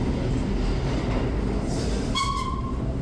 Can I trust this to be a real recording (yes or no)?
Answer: yes